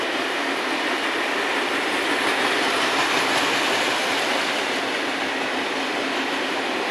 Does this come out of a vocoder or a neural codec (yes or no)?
no